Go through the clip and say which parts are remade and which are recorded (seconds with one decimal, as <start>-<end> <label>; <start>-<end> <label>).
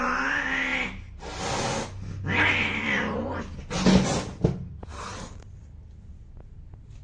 0.0-7.0 recorded